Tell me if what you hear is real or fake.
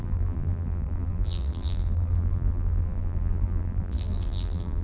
fake